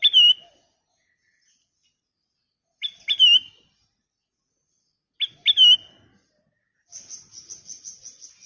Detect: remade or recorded recorded